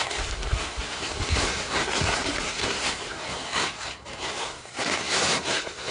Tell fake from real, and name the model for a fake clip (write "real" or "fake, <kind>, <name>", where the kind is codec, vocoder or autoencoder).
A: fake, codec, SNAC